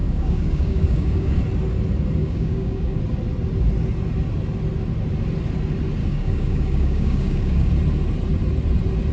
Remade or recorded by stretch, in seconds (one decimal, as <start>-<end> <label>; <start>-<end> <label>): 0.0-1.4 remade; 1.4-2.2 recorded; 2.2-3.0 remade; 3.0-6.0 recorded; 6.0-7.7 remade; 7.7-9.1 recorded